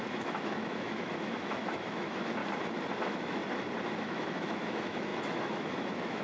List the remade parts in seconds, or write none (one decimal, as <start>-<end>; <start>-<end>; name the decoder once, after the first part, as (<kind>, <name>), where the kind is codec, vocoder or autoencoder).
0.0-2.4 (autoencoder, DAC-VAE); 3.0-3.4; 4.0-6.2

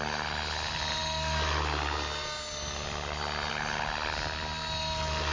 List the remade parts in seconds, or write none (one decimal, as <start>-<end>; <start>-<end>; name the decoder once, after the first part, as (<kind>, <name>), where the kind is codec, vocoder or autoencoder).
none

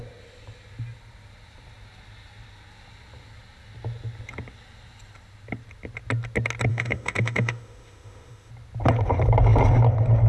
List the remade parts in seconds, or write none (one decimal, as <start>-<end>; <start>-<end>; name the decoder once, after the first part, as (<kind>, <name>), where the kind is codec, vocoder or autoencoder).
6.7-8.5 (autoencoder, DAC-VAE)

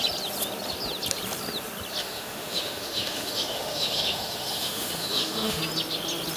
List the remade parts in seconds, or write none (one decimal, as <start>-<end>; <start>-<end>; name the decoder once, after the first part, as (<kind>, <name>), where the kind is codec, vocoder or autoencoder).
2.0-5.6 (autoencoder, DAC-VAE)

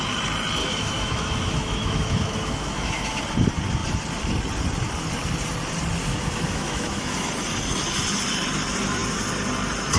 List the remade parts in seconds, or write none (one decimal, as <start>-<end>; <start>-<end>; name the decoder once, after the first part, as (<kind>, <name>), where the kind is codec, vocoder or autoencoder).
0.6-3.2 (autoencoder, DAC-VAE); 6.0-7.3

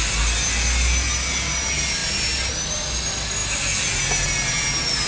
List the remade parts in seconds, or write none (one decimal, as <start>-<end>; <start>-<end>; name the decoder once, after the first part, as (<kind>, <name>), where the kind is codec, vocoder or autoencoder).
none

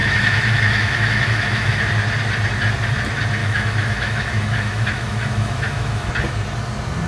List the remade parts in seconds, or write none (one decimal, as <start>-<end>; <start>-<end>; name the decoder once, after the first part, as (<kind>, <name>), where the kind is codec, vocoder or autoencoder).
0.0-1.8 (autoencoder, DAC-VAE); 3.4-6.1